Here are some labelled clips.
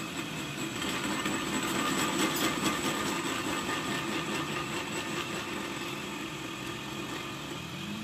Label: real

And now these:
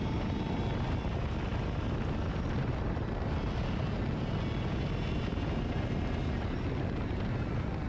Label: real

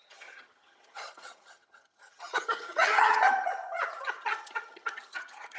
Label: fake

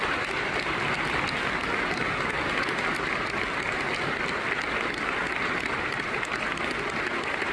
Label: real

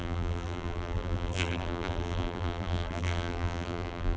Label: fake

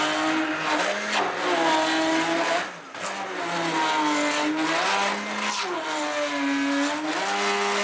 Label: real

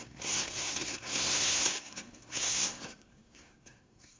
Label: fake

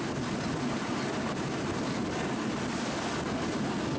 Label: real